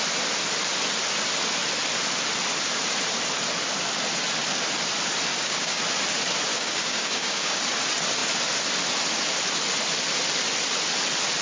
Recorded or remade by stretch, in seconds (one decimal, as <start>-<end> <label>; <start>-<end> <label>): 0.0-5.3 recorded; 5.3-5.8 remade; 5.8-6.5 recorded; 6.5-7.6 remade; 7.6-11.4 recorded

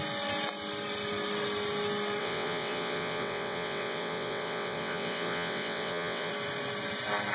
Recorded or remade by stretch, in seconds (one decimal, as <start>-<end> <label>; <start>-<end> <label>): 0.0-2.2 recorded; 2.2-6.3 remade; 6.3-7.3 recorded

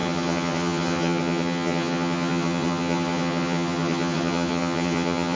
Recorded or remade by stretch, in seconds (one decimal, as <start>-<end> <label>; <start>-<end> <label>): 0.0-5.4 remade